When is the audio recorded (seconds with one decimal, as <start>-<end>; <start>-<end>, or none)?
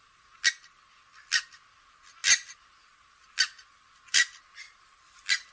0.0-5.5